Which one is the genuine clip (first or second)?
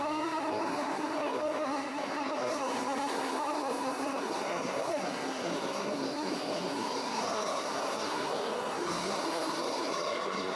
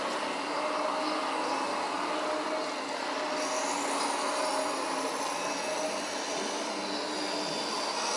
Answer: second